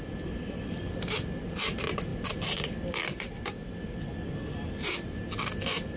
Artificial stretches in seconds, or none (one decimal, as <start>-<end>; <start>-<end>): none